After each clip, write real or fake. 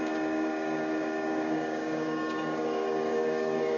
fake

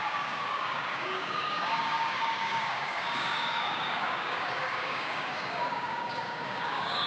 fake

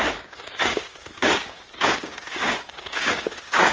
fake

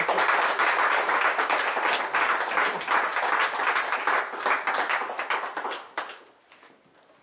real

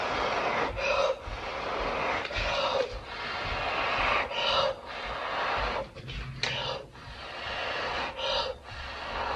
real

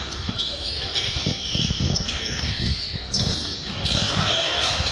fake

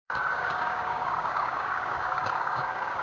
fake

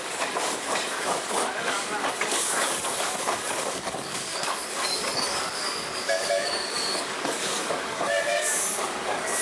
fake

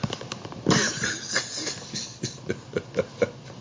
real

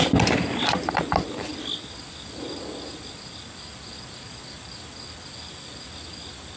real